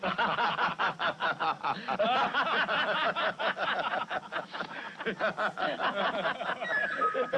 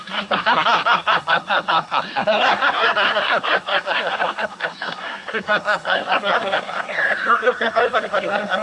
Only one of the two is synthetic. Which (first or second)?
second